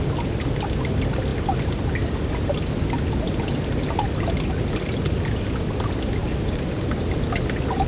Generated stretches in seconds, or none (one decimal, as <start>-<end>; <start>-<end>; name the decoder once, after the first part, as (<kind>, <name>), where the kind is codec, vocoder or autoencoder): none